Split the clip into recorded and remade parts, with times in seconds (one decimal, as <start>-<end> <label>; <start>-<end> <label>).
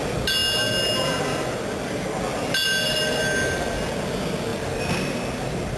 0.0-5.8 recorded